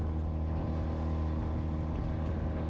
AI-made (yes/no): no